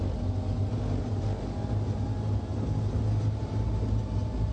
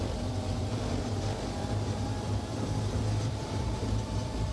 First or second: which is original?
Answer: first